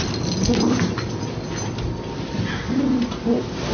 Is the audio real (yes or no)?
yes